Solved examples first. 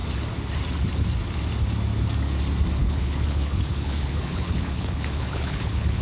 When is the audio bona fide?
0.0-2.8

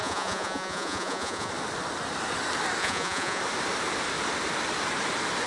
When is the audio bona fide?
1.5-2.8; 3.4-5.5

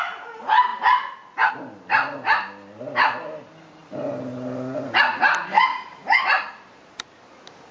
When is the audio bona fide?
0.0-7.7

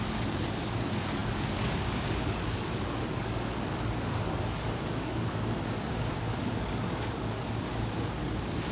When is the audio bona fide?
none

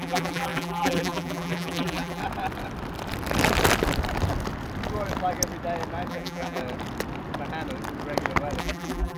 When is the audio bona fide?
2.2-6.1; 6.6-8.6

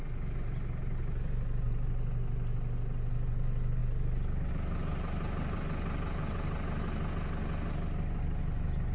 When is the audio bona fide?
0.0-8.9

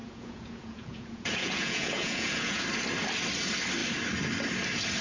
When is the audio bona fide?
2.6-5.0